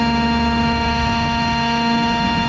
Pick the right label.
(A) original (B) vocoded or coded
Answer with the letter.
B